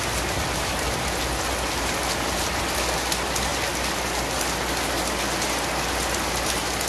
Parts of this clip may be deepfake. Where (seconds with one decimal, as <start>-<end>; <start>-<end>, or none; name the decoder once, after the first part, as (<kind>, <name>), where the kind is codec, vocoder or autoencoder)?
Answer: none